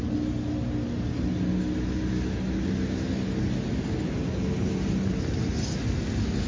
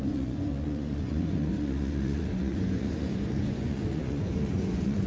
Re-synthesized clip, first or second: second